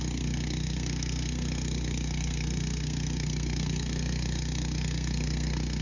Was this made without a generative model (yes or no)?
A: no